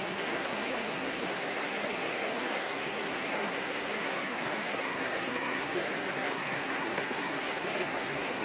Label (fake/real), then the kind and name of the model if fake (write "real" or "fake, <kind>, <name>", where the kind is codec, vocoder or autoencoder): fake, codec, SNAC